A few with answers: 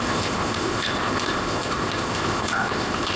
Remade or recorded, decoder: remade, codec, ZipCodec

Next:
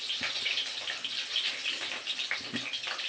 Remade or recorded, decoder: recorded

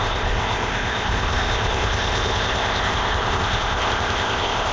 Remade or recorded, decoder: remade, codec, ZipCodec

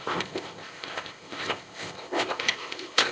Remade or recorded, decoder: remade, codec, ZipCodec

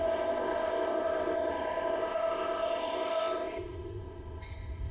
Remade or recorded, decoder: remade, codec, ZipCodec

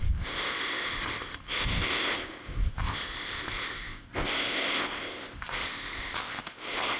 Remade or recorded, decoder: remade, codec, ZipCodec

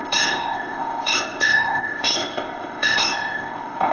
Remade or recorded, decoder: remade, codec, ZipCodec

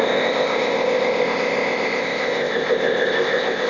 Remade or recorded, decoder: remade, codec, ZipCodec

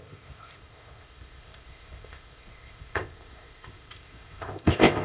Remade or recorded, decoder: remade, codec, ZipCodec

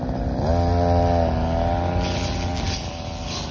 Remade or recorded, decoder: recorded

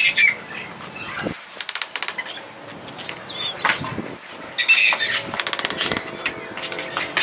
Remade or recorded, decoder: recorded